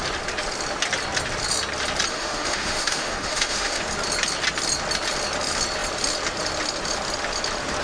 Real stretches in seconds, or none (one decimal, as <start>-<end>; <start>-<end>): 0.0-2.1; 3.8-7.8